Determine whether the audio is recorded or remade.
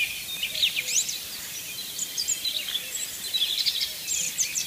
remade